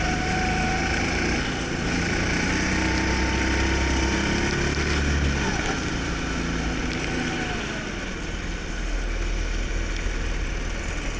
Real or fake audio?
real